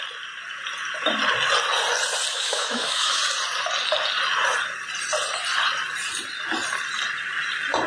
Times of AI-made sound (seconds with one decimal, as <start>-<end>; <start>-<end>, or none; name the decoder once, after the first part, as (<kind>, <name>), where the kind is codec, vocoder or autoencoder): 2.3-3.2 (autoencoder, DAC-VAE)